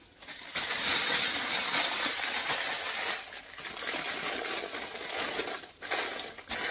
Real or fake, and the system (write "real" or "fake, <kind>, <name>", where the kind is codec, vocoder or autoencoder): real